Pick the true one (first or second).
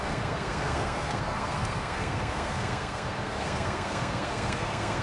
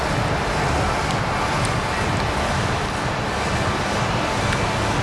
second